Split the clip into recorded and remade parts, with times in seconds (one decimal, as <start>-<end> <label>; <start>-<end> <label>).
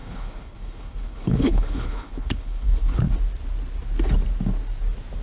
0.0-3.1 remade; 3.1-5.2 recorded